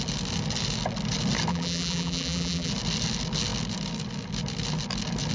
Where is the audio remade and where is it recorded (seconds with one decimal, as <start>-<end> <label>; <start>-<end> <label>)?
0.0-1.5 recorded; 1.5-2.7 remade; 2.7-5.3 recorded